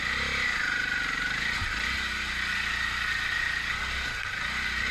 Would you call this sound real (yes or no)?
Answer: yes